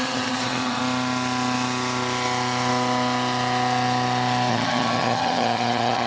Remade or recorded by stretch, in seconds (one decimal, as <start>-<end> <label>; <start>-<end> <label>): 0.0-0.8 remade; 0.8-4.5 recorded; 4.5-6.1 remade